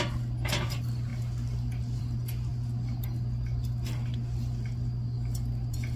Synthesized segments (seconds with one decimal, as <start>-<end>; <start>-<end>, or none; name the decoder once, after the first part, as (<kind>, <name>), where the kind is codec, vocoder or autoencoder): none